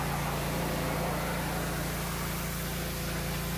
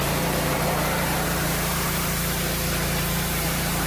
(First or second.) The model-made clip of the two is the second